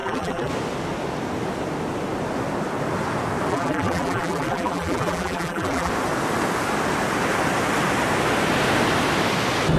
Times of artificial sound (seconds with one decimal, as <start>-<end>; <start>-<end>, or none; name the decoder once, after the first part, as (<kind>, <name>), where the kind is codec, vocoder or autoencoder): 0.0-0.5 (vocoder, BigVGAN v2); 3.5-5.9